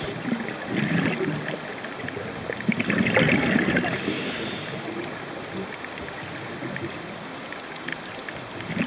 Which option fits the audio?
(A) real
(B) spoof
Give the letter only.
A